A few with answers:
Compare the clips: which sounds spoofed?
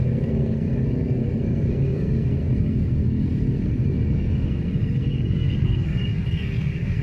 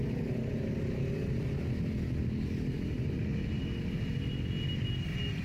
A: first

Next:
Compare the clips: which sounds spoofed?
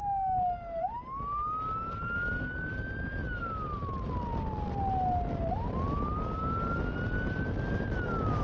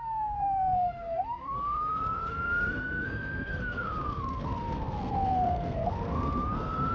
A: second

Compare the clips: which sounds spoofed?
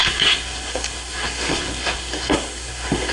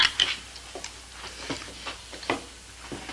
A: first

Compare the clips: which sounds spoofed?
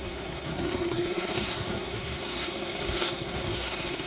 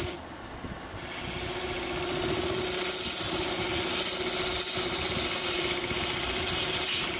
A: first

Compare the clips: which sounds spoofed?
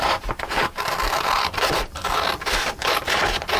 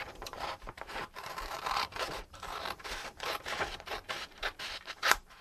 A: second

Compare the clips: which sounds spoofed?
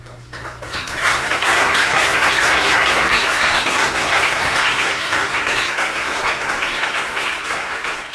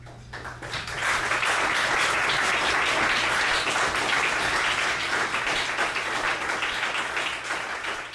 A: first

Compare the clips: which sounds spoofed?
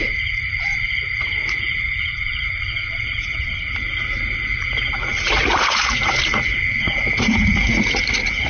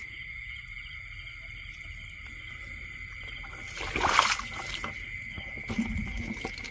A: first